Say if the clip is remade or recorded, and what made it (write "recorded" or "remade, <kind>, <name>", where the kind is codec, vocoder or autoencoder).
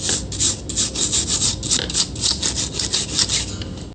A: recorded